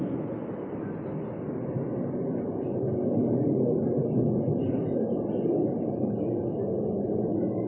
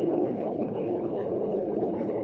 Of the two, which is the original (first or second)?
first